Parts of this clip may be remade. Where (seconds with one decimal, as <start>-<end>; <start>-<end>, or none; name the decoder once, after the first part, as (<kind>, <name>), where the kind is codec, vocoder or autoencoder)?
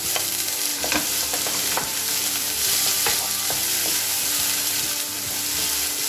0.7-2.9 (vocoder, BigVGAN v2); 3.6-5.2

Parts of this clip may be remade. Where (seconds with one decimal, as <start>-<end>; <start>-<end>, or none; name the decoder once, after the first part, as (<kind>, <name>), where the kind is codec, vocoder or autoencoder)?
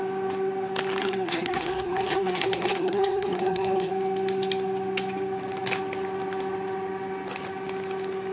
1.0-3.9 (codec, SNAC)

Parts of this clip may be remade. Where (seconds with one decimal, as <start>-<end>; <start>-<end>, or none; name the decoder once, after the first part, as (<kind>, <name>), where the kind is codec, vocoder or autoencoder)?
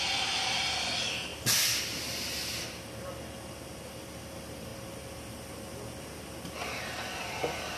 none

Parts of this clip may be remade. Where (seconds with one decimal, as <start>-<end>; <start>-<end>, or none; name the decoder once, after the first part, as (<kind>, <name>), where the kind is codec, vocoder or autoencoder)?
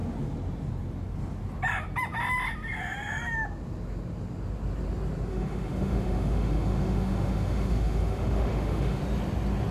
5.3-9.0 (autoencoder, DAC-VAE)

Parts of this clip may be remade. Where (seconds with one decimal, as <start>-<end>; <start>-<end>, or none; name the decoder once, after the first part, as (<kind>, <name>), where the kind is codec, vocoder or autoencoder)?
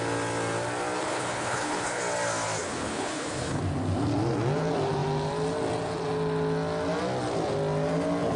1.0-2.0 (codec, HILCodec); 2.6-3.6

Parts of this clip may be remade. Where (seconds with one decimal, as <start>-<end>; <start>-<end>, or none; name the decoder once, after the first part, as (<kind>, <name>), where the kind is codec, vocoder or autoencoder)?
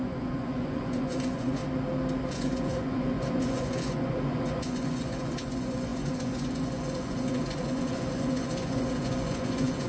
0.0-1.6 (vocoder, Vocos); 2.3-9.9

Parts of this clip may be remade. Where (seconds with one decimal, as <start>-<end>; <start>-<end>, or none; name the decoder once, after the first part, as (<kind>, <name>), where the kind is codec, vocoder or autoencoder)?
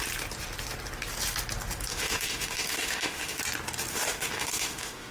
1.9-3.4 (autoencoder, DAC-VAE); 3.9-5.1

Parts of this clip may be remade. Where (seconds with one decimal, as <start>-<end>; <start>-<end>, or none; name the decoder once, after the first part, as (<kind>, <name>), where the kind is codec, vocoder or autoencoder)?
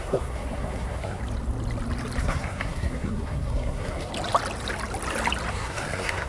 0.0-1.2 (codec, SNAC); 2.2-4.1; 5.5-6.3